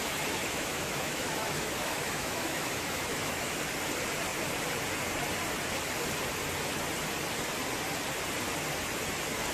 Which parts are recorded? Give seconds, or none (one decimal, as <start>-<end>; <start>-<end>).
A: 0.0-0.4; 3.6-9.5